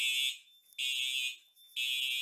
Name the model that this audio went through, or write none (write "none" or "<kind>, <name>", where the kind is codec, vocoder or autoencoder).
none